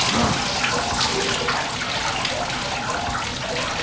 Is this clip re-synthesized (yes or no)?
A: no